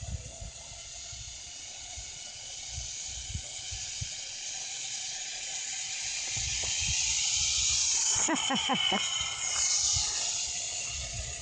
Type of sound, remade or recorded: remade